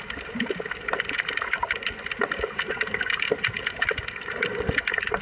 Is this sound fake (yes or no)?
no